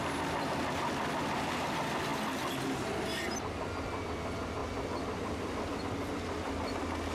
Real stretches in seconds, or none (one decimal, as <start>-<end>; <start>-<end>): 0.0-7.1